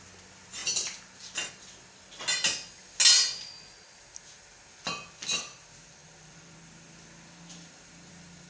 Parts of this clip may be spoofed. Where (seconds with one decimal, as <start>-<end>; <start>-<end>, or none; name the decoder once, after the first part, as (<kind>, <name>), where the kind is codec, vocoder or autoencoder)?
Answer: none